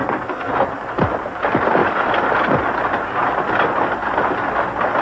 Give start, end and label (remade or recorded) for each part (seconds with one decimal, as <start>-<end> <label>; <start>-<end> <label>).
0.0-0.5 remade; 0.5-5.0 recorded